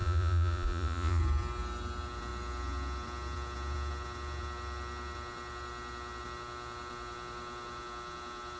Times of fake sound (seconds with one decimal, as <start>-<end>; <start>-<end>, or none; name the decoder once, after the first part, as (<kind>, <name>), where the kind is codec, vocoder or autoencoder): 0.0-1.2 (vocoder, Vocos)